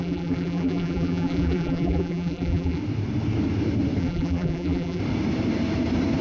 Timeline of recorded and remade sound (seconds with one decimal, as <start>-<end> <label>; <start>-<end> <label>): 0.0-2.8 remade; 2.8-4.0 recorded; 4.0-5.0 remade; 5.0-6.2 recorded